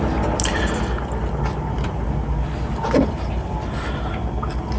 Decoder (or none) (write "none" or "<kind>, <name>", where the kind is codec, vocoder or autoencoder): none